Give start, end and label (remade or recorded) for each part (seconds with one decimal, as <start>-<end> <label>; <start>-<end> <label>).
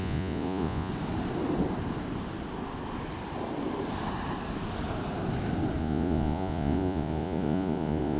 0.0-0.9 remade; 0.9-5.8 recorded; 5.8-8.2 remade